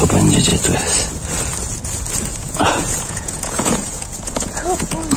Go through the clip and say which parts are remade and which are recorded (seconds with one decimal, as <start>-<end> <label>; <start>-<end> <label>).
0.0-2.3 recorded; 2.3-5.2 remade